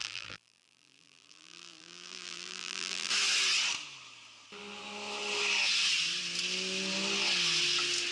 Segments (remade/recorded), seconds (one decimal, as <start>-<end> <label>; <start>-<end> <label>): 0.0-3.1 remade; 3.1-8.1 recorded